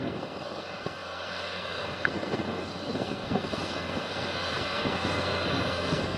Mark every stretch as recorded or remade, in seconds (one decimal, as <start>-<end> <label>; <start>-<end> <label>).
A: 0.0-6.2 remade